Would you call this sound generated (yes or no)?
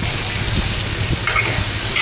no